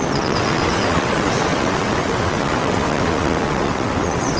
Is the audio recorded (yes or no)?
no